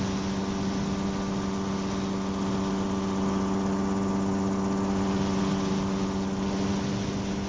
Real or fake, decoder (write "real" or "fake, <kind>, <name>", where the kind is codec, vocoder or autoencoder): real